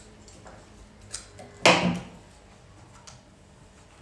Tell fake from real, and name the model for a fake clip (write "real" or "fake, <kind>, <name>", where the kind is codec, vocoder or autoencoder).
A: real